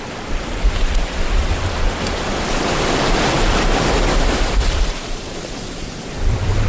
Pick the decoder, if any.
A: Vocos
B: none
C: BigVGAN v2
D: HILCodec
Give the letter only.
C